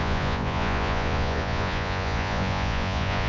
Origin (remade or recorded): remade